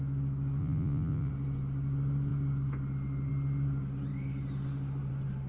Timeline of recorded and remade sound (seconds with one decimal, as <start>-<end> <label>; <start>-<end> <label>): 0.0-0.6 recorded; 0.6-1.3 remade; 1.3-5.5 recorded